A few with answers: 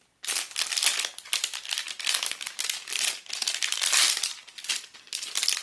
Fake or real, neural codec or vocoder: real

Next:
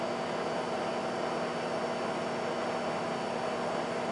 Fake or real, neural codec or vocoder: real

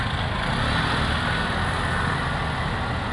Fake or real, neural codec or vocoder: real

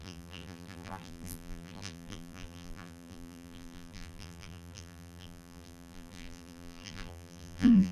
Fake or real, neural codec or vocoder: fake, vocoder, BigVGAN v2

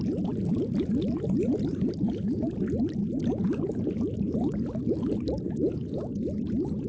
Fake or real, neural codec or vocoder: real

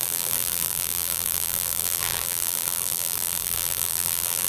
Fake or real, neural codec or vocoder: fake, vocoder, BigVGAN v2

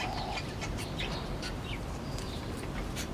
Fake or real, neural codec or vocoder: fake, vocoder, BigVGAN v2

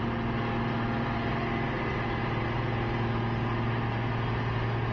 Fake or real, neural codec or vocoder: real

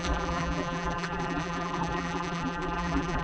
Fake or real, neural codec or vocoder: fake, vocoder, BigVGAN v2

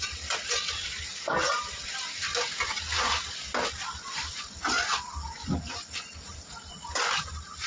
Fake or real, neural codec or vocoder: real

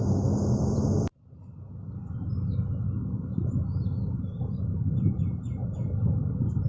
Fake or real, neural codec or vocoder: real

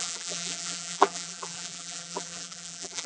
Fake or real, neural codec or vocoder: fake, vocoder, BigVGAN v2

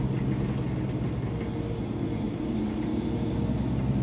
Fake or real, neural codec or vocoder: real